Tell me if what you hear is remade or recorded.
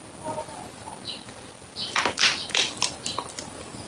recorded